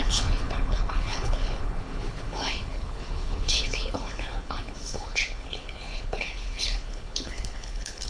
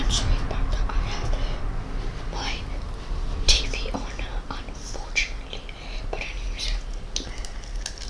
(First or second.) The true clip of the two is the second